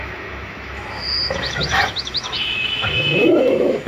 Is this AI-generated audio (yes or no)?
yes